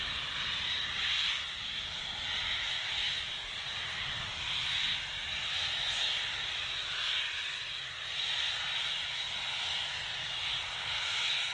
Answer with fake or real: real